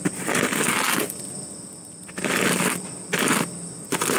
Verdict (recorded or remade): recorded